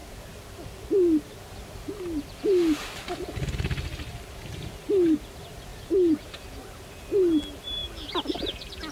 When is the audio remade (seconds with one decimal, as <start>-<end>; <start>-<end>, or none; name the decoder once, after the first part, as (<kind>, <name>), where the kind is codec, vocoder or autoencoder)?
0.0-3.1 (vocoder, BigVGAN v2); 7.8-8.9